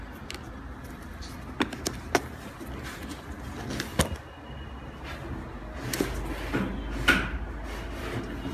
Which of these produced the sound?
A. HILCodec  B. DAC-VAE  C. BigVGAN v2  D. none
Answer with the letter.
D